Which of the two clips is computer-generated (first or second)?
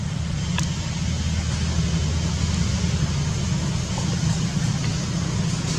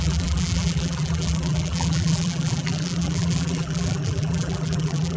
second